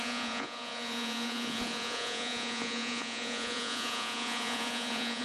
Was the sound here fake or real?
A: fake